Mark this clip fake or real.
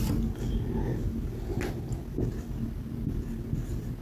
real